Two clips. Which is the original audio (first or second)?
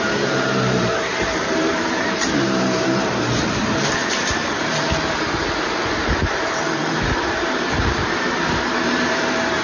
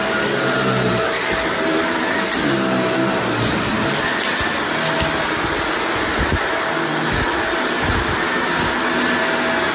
second